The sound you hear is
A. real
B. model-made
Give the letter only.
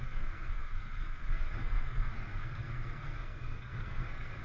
B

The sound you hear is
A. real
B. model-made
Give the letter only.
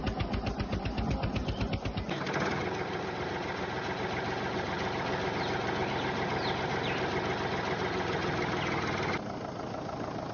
A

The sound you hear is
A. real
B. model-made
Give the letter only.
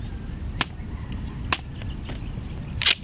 A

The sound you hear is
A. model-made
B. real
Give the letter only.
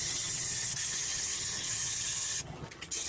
A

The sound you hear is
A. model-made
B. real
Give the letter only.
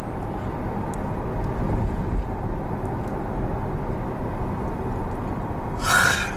B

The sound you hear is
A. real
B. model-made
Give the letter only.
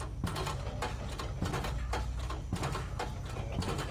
A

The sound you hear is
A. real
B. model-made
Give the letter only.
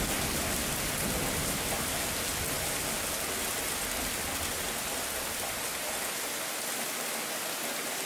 A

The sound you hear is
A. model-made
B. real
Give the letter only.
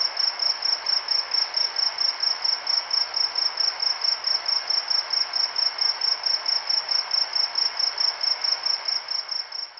B